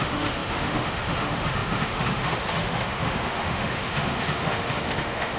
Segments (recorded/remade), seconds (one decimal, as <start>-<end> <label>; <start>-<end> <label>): 0.0-5.4 remade